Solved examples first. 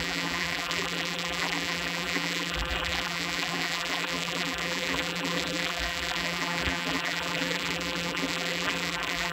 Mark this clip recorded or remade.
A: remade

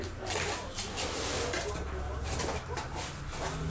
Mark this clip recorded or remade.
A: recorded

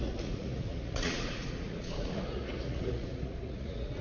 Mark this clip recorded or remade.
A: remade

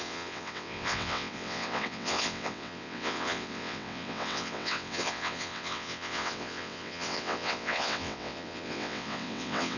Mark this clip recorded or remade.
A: remade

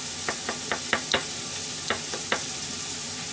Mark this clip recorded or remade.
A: recorded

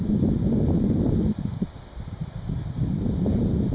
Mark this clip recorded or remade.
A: recorded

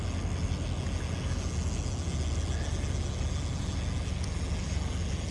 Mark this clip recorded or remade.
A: recorded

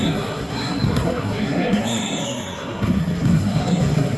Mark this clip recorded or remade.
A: remade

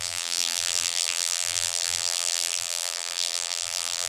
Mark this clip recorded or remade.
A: remade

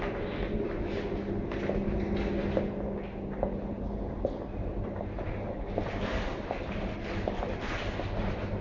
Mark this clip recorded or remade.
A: recorded